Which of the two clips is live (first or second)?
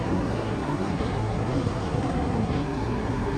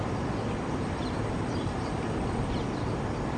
second